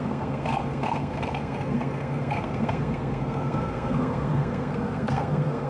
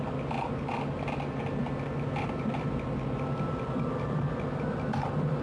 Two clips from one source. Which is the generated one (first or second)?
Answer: first